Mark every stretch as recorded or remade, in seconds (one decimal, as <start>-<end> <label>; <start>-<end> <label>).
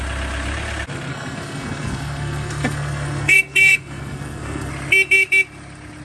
0.0-1.1 recorded; 1.1-4.7 remade; 4.7-6.0 recorded